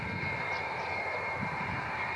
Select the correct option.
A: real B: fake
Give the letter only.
B